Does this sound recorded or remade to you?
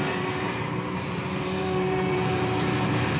remade